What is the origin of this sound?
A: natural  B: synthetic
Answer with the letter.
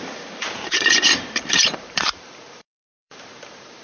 B